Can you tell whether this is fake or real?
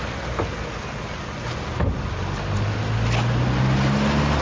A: real